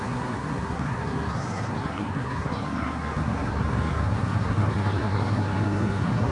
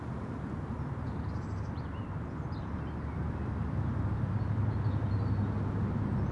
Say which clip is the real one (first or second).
second